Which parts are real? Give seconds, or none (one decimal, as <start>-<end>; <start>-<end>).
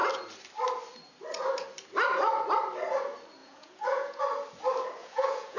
0.0-3.4; 4.2-5.0